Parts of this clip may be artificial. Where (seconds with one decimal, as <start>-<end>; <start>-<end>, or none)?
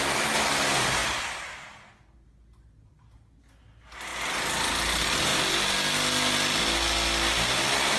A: none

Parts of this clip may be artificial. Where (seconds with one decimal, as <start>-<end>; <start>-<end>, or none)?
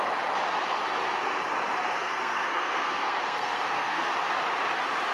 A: 2.0-4.1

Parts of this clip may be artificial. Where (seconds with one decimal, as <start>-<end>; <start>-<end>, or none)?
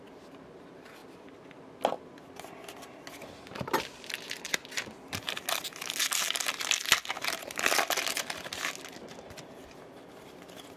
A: none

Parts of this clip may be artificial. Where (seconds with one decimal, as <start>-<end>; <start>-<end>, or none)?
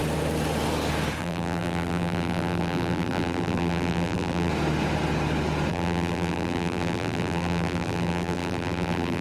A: 1.2-4.5; 5.7-9.2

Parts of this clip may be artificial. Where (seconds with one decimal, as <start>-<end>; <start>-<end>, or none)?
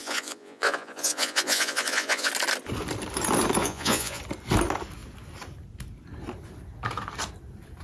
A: 0.0-2.3; 3.6-4.2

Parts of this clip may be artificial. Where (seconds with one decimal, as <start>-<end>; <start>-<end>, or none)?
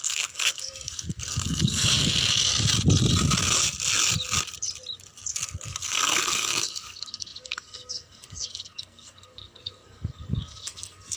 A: 0.0-2.5; 5.3-11.2